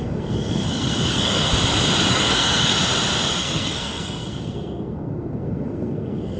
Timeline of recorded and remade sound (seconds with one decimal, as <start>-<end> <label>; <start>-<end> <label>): 0.0-1.5 remade; 1.5-2.1 recorded; 2.1-2.7 remade; 2.7-3.4 recorded; 3.4-6.4 remade